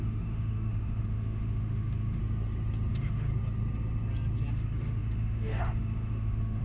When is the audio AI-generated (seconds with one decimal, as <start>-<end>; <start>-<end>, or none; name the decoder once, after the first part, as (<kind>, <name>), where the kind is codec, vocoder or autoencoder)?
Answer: 0.0-2.2 (autoencoder, DAC-VAE); 2.9-3.3; 4.5-6.6